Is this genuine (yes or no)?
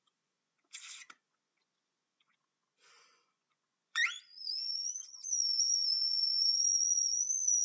no